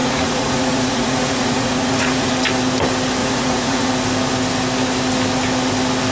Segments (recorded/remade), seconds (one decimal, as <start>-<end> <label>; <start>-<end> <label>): 0.0-2.3 remade; 2.3-3.2 recorded; 3.2-3.9 remade; 3.9-6.1 recorded